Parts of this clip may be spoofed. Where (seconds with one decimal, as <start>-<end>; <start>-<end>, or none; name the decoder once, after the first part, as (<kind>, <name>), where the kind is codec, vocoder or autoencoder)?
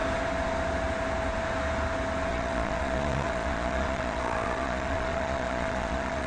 2.3-6.3 (vocoder, Vocos)